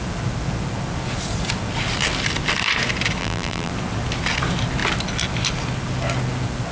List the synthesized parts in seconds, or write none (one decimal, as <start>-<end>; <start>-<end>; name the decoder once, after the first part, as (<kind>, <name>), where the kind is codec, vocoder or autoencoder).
3.2-3.7 (vocoder, BigVGAN v2)